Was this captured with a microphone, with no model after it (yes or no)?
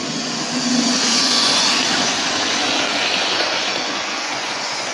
no